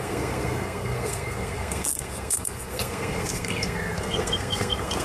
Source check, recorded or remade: remade